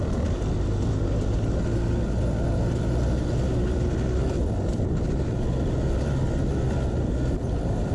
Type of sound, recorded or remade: recorded